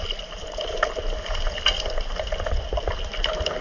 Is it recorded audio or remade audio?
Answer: recorded